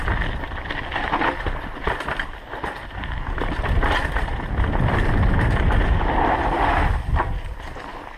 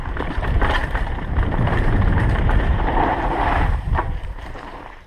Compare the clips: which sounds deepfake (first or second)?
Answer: second